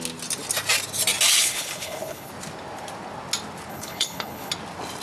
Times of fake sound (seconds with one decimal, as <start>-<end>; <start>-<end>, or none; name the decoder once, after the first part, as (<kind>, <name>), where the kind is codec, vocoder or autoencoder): 1.4-2.3 (codec, HILCodec); 3.7-4.5